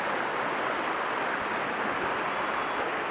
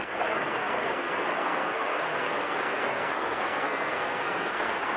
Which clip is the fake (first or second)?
second